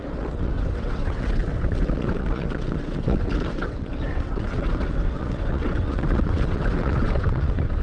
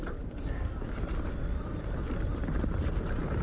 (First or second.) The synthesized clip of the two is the first